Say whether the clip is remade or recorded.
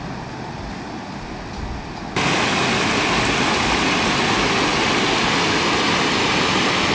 recorded